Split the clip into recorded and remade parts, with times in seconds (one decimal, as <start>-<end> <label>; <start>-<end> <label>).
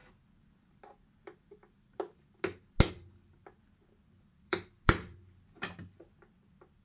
0.0-2.9 recorded; 2.9-6.8 remade